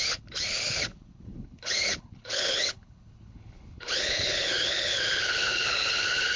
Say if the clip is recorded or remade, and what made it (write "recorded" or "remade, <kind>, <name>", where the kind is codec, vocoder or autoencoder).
remade, codec, HILCodec